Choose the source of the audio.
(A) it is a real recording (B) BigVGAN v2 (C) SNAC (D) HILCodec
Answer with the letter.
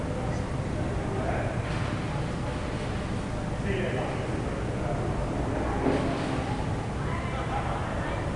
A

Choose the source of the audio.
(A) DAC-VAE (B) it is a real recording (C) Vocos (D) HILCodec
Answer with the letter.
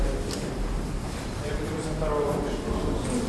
B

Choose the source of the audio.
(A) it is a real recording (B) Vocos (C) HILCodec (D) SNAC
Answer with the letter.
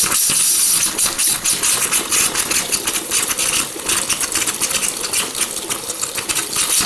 A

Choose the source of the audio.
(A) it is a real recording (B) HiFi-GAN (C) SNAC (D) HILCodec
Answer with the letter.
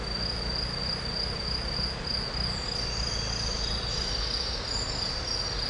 A